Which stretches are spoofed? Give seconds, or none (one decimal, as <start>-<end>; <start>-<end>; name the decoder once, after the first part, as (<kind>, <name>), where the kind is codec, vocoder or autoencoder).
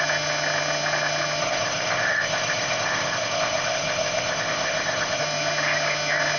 1.4-5.2 (codec, ZipCodec)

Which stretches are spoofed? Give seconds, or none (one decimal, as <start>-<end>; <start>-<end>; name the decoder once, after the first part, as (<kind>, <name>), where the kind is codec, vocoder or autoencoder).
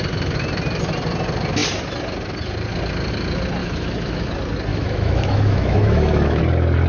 3.6-4.3 (autoencoder, DAC-VAE); 4.7-6.4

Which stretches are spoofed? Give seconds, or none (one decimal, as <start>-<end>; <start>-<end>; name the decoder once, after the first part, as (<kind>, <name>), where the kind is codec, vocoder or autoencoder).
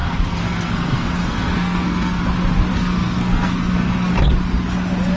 0.0-2.2 (codec, SNAC); 2.7-4.1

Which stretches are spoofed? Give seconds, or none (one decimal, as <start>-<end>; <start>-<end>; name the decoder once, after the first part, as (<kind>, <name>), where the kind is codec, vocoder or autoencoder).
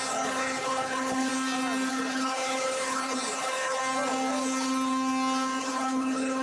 0.0-1.3 (codec, HILCodec); 1.9-3.8; 5.6-6.4